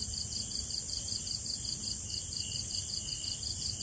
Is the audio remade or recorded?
remade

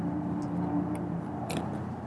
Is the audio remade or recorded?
remade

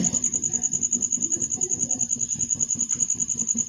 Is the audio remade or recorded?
remade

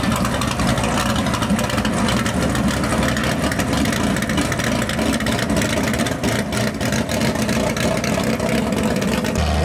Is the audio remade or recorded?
recorded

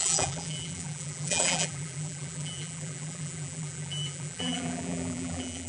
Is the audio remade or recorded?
remade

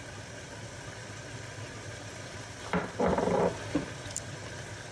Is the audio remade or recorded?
remade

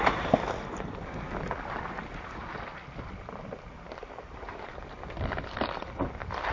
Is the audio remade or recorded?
recorded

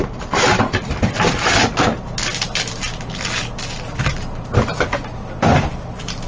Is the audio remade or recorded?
recorded